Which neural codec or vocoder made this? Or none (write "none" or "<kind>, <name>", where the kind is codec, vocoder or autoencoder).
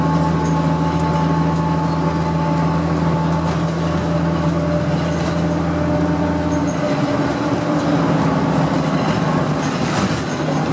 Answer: none